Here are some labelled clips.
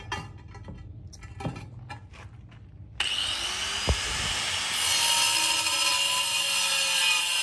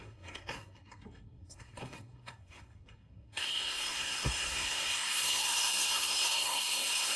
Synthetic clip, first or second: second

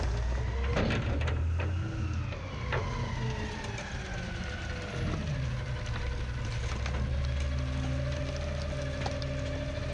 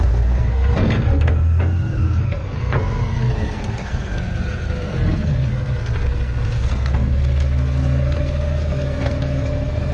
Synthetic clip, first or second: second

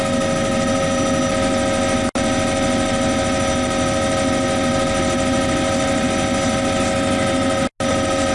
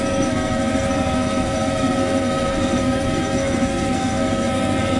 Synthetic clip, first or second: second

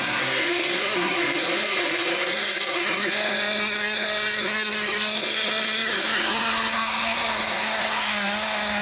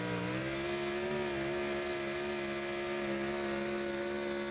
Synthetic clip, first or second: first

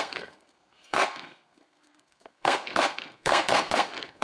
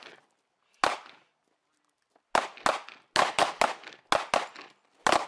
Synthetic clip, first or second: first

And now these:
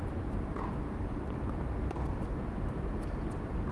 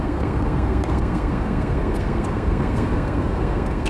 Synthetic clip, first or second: second